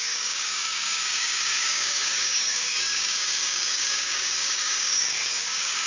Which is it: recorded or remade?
remade